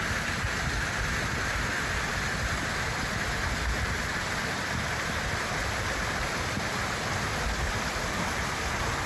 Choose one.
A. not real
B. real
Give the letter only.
B